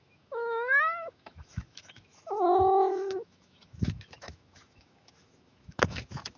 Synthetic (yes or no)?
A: yes